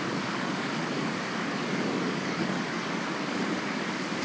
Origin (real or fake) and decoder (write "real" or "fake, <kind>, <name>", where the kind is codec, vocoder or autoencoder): fake, codec, DAC